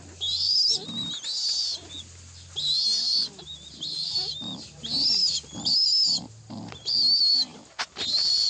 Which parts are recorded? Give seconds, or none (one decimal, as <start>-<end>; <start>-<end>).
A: 0.0-8.5